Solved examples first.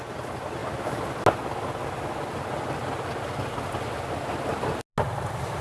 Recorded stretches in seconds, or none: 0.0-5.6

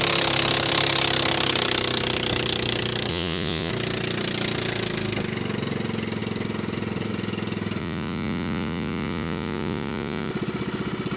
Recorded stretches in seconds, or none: 0.0-3.1; 3.7-7.8; 10.3-11.2

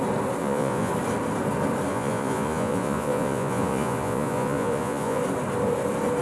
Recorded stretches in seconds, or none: 0.0-0.4; 0.9-1.9; 5.2-6.2

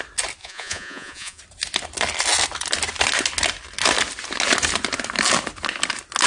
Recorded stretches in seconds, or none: 0.0-0.4; 1.4-6.3

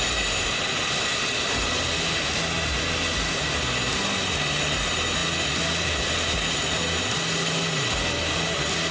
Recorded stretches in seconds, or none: 0.0-8.9

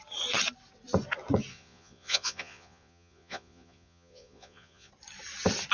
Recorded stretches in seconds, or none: 0.0-1.5; 4.9-5.7

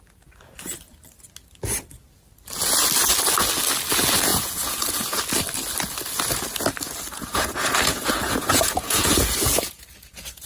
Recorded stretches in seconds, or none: 0.0-4.3; 5.2-7.1